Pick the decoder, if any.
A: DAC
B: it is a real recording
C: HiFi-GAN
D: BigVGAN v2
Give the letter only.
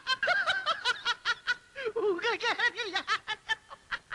B